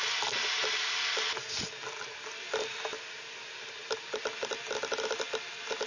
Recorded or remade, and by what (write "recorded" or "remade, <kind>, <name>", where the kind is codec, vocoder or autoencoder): recorded